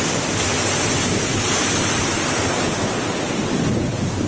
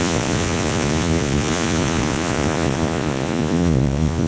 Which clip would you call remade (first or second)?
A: second